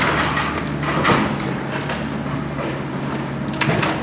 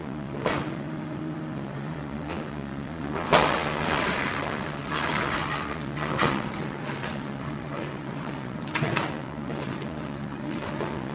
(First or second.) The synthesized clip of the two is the second